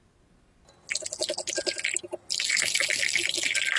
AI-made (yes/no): no